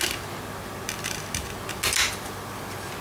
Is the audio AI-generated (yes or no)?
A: no